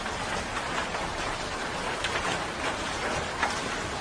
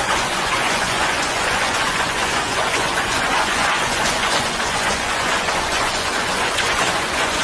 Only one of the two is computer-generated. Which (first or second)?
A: second